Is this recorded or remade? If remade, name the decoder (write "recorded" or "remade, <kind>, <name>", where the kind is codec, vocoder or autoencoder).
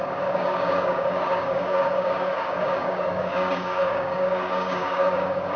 remade, codec, DAC